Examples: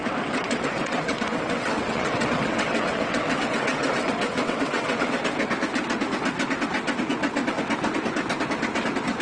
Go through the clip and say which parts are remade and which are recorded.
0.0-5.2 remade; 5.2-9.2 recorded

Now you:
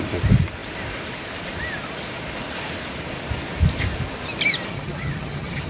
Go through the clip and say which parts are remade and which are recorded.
0.0-4.7 recorded; 4.7-5.7 remade

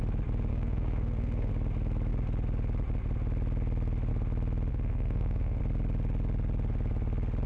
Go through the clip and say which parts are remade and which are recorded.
0.0-0.5 recorded; 0.5-1.5 remade; 1.5-4.7 recorded; 4.7-5.6 remade; 5.6-7.5 recorded

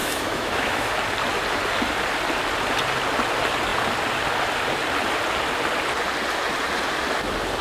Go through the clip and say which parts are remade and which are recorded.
0.0-0.9 remade; 0.9-7.6 recorded

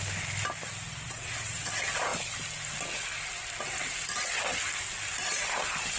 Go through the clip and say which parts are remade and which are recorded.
0.0-0.9 recorded; 0.9-1.7 remade; 1.7-6.0 recorded